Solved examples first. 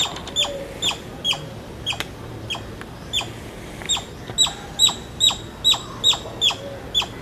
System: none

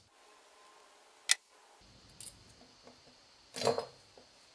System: none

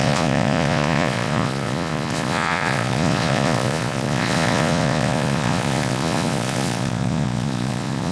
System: vocoder, Vocos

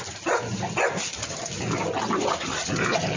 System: none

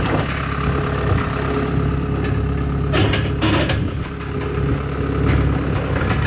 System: none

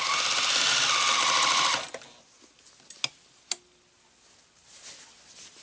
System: none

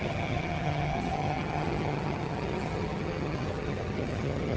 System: vocoder, HiFi-GAN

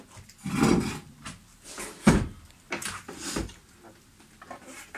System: none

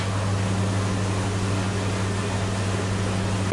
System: none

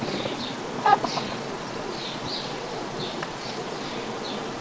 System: vocoder, Vocos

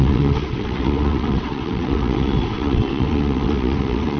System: vocoder, WaveNeXt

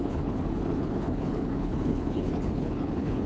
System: codec, HILCodec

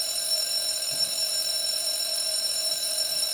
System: vocoder, BigVGAN v2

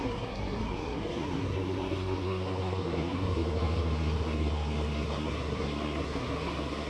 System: codec, SNAC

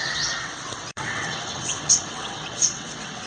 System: vocoder, WaveNeXt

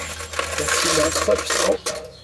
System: none